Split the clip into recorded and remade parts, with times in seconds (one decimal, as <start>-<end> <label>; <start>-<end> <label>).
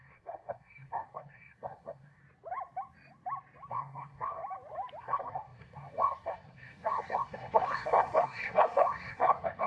0.0-2.2 remade; 2.2-3.7 recorded; 3.7-4.4 remade; 4.4-5.0 recorded; 5.0-9.7 remade